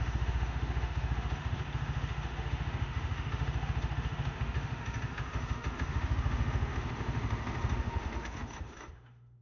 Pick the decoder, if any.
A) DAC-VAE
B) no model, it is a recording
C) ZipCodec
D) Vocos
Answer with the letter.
A